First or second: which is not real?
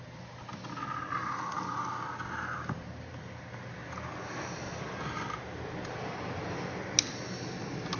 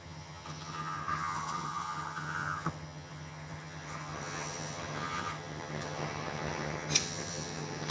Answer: second